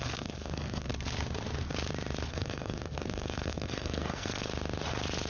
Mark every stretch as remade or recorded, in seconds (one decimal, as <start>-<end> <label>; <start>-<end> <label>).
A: 0.0-0.9 remade; 0.9-2.3 recorded; 2.3-4.5 remade; 4.5-5.3 recorded